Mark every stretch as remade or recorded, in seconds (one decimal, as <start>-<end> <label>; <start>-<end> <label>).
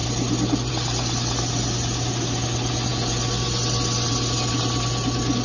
0.0-5.4 recorded